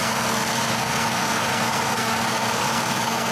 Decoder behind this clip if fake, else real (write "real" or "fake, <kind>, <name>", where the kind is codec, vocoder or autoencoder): fake, codec, SNAC